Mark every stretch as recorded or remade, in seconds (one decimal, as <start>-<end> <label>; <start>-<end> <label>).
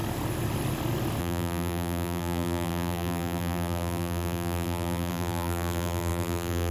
0.0-1.2 recorded; 1.2-6.7 remade